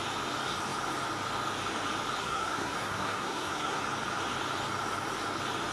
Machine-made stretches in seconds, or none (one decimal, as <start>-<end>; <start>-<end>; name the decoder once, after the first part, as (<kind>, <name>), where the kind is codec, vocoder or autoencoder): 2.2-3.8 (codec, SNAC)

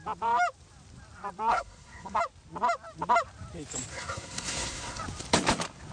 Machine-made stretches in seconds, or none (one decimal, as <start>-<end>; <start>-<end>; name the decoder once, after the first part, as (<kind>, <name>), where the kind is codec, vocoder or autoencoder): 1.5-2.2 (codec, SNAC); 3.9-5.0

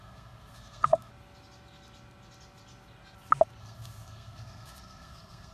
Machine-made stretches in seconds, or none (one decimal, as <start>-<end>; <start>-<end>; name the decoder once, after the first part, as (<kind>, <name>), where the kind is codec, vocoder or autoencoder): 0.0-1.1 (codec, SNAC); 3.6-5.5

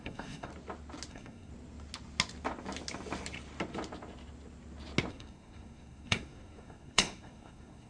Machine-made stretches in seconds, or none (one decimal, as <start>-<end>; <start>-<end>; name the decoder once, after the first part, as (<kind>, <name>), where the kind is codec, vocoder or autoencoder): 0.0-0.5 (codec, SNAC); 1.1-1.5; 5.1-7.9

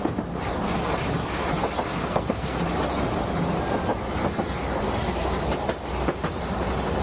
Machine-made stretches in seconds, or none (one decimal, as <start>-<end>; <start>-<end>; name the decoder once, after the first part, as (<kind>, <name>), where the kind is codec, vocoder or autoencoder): 2.0-2.6 (codec, SNAC)

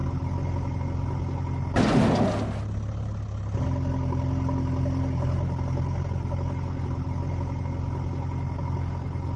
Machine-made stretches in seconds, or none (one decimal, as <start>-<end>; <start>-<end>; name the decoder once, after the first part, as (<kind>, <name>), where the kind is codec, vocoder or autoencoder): none